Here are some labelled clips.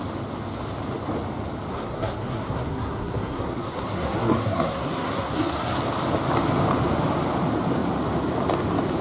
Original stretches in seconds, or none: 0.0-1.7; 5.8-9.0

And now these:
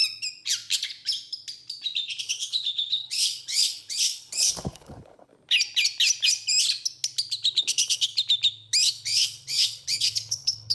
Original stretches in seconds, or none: 0.0-2.2; 5.3-7.6; 8.1-8.9

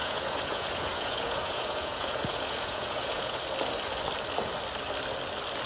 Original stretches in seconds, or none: 3.4-5.7

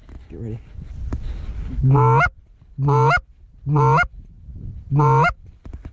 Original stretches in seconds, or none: 0.0-5.9

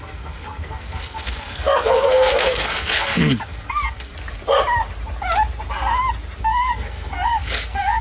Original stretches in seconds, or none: 4.1-6.4

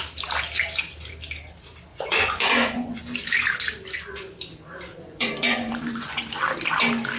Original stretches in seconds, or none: 0.0-1.9; 3.0-4.9; 6.4-7.2

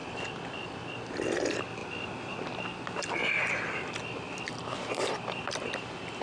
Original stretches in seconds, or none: 0.8-1.8; 2.3-3.2; 3.9-4.5

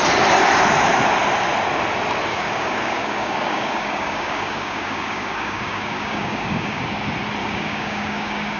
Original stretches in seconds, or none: 0.0-2.3; 6.8-7.4